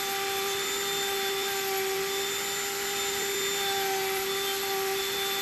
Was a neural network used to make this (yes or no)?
no